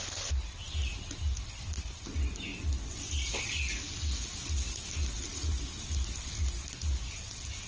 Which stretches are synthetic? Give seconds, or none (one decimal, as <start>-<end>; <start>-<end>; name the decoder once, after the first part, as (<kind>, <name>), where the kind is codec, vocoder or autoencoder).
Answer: 2.5-3.4 (vocoder, BigVGAN v2); 5.3-6.4